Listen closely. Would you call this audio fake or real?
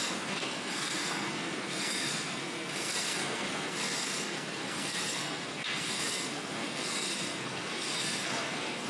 fake